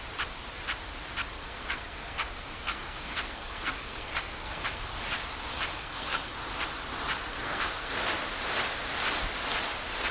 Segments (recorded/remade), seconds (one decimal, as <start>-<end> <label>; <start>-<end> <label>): 0.0-1.4 recorded; 1.4-4.8 remade; 4.8-5.8 recorded; 5.8-6.3 remade; 6.3-7.3 recorded; 7.3-7.9 remade; 7.9-10.1 recorded